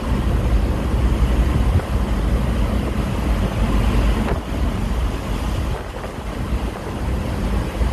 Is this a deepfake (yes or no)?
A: no